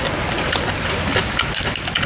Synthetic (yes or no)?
no